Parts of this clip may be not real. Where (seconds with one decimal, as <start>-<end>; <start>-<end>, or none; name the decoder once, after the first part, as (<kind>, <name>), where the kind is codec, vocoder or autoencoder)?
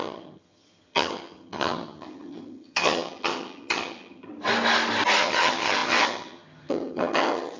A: 0.0-4.3 (vocoder, HiFi-GAN); 5.2-7.6